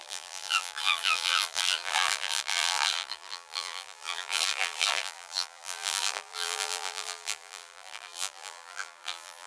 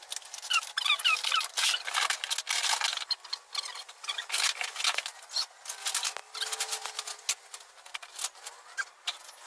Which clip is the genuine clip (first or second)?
second